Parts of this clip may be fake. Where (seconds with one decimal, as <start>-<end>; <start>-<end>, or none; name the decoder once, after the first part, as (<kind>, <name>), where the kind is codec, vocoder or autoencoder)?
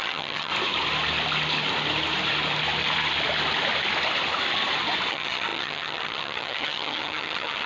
0.0-0.5 (vocoder, HiFi-GAN); 5.1-7.7